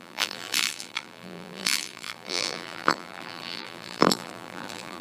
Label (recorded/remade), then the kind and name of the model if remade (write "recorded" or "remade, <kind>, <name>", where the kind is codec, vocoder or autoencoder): remade, vocoder, BigVGAN v2